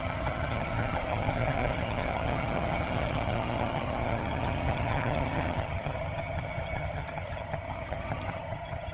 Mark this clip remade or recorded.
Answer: remade